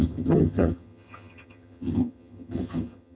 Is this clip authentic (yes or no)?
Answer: no